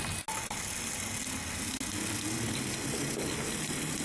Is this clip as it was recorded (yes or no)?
yes